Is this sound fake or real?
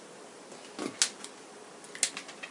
real